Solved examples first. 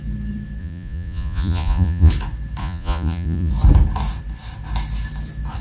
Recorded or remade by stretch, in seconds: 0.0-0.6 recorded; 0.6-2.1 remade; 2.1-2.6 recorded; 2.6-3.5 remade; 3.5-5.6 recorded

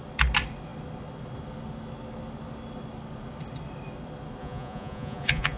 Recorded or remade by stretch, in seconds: 0.0-4.4 recorded; 4.4-5.6 remade

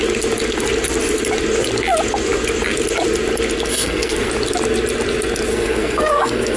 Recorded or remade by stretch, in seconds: 0.0-3.7 recorded; 3.7-4.3 remade; 4.3-5.5 recorded; 5.5-6.6 remade

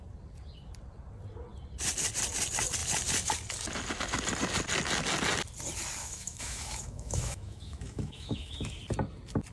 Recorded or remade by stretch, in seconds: 0.0-6.0 recorded; 6.0-8.8 remade; 8.8-9.5 recorded

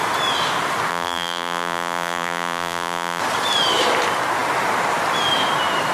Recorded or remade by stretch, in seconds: 0.0-0.9 recorded; 0.9-3.2 remade; 3.2-5.9 recorded